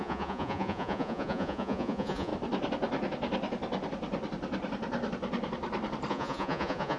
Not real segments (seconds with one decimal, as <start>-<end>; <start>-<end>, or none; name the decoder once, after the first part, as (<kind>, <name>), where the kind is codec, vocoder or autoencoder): 0.0-2.3 (vocoder, Vocos); 6.1-7.0